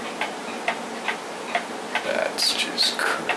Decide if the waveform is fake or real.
real